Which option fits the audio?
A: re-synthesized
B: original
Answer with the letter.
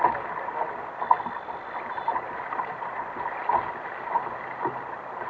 B